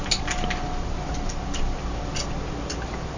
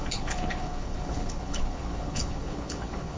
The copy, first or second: second